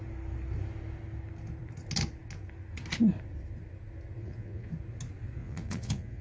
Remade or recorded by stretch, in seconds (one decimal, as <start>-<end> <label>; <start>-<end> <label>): 0.0-4.2 recorded; 4.2-4.7 remade; 4.7-5.4 recorded; 5.4-6.2 remade